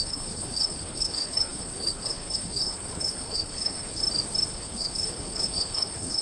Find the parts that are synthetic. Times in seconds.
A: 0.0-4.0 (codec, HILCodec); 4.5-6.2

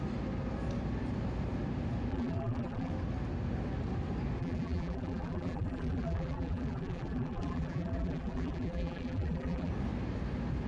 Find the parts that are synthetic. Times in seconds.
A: 2.1-2.9 (vocoder, BigVGAN v2); 4.4-9.7